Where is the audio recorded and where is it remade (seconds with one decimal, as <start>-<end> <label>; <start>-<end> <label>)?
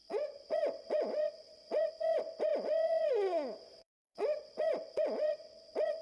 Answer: 0.0-6.0 remade